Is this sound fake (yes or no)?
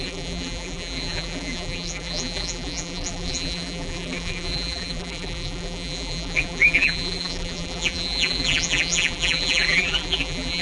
yes